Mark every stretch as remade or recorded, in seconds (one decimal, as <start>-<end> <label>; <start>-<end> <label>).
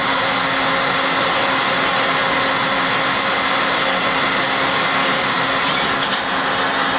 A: 0.0-7.0 recorded